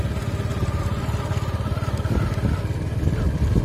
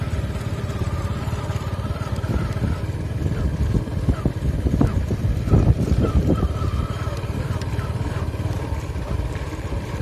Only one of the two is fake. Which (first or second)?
second